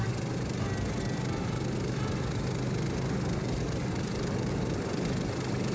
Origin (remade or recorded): recorded